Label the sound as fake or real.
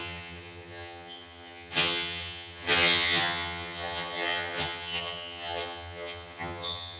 fake